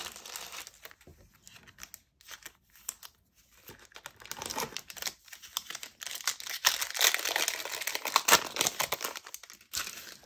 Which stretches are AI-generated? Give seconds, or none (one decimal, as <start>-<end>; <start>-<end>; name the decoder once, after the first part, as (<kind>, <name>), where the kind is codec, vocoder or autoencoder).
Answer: none